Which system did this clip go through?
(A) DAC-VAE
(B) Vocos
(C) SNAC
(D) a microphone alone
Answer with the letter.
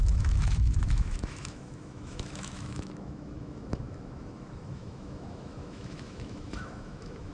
A